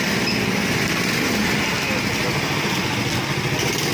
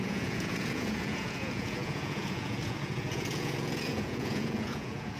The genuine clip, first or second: first